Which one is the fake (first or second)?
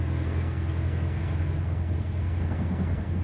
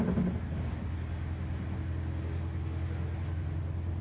first